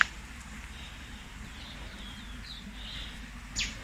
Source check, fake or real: real